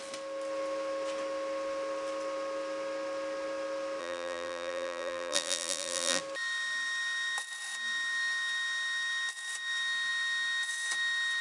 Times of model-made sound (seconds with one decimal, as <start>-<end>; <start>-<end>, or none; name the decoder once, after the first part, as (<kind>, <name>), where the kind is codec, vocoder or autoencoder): 4.0-6.2 (vocoder, BigVGAN v2)